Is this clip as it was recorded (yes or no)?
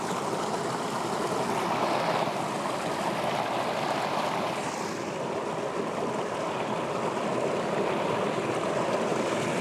yes